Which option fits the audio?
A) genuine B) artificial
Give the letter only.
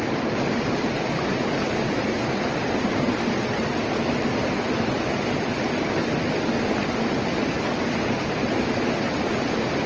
A